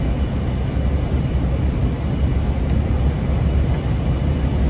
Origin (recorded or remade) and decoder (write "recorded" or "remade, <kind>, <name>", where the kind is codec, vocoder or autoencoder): recorded